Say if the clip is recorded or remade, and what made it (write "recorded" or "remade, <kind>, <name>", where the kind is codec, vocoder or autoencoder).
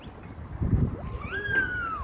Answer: recorded